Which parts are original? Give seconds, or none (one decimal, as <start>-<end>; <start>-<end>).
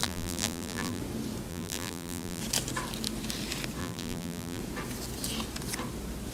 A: 1.0-1.5; 2.4-3.8; 4.6-6.3